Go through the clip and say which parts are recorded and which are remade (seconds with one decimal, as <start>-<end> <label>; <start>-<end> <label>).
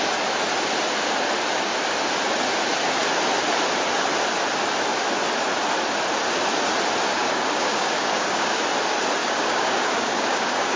0.0-7.2 recorded; 7.2-8.6 remade; 8.6-9.2 recorded; 9.2-10.8 remade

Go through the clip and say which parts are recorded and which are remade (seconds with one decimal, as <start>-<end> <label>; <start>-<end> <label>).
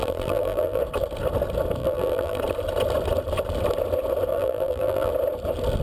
0.0-0.8 remade; 0.8-1.8 recorded; 1.8-2.4 remade; 2.4-4.3 recorded; 4.3-5.1 remade; 5.1-5.8 recorded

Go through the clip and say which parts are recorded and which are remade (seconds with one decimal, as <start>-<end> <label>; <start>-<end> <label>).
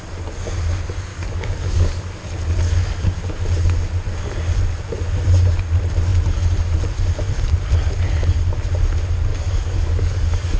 0.0-1.1 recorded; 1.1-1.9 remade; 1.9-9.3 recorded; 9.3-10.6 remade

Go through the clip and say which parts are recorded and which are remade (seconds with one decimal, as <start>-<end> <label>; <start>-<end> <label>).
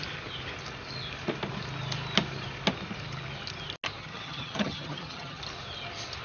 0.0-4.0 recorded; 4.0-5.4 remade; 5.4-6.2 recorded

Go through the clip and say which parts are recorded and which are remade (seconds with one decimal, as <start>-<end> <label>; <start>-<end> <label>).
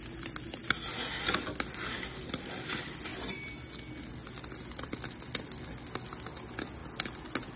0.0-7.6 recorded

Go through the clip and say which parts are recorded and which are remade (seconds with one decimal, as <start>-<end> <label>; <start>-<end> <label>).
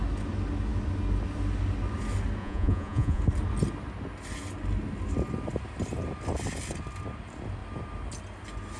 0.0-2.4 recorded; 2.4-3.2 remade; 3.2-8.8 recorded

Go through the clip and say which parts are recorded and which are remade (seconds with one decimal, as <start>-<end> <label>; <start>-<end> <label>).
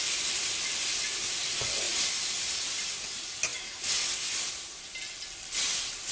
0.0-6.1 recorded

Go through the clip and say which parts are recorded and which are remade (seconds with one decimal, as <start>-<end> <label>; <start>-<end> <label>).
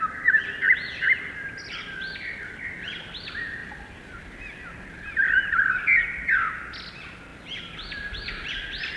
0.0-9.0 recorded